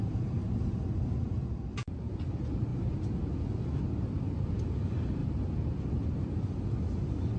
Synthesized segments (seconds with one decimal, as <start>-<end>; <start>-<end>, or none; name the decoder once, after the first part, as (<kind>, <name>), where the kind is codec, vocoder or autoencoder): 0.0-0.5 (vocoder, BigVGAN v2); 2.7-3.2; 5.2-6.4